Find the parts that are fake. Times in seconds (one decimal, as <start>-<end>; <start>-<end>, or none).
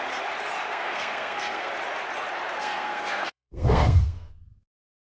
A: 0.7-1.7; 2.6-5.0